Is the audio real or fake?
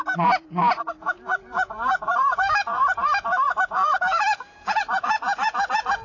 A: fake